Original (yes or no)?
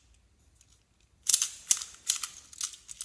yes